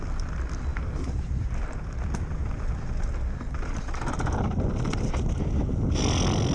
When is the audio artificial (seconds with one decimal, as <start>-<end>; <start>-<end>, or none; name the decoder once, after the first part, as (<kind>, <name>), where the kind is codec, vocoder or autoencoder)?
none